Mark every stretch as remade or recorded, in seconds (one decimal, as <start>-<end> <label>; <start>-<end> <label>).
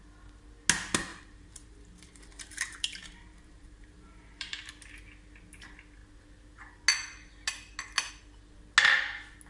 0.0-1.1 recorded; 1.1-4.7 remade; 4.7-9.5 recorded